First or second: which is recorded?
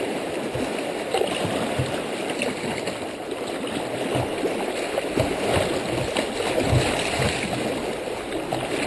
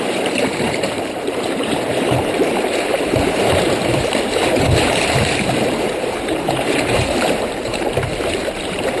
first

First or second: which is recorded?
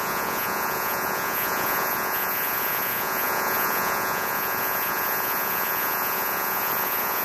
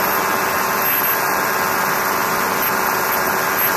second